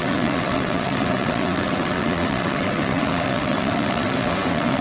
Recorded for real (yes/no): no